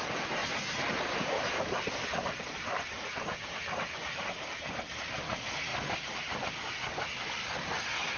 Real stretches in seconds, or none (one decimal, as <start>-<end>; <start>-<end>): 0.0-0.4; 4.3-8.2